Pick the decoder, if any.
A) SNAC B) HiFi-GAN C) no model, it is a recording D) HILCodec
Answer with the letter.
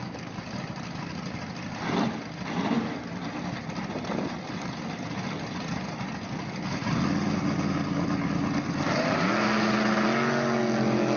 C